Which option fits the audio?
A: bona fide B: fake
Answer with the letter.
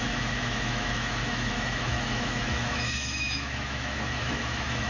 B